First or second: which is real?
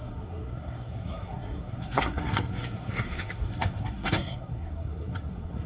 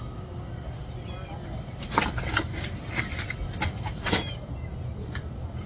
second